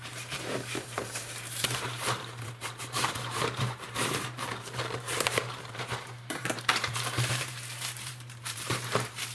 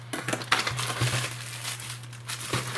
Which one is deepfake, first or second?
first